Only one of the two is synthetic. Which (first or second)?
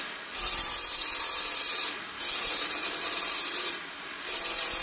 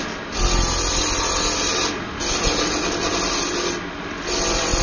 first